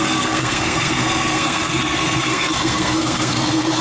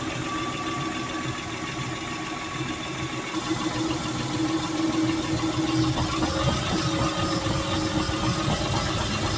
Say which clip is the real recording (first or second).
second